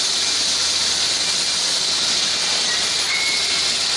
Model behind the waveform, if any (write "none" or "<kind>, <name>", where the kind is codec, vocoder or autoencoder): none